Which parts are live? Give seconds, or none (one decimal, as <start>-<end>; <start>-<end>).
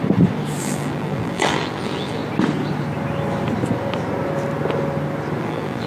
0.0-0.6; 2.2-5.4